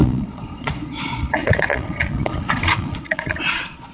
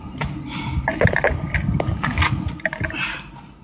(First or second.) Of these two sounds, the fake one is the first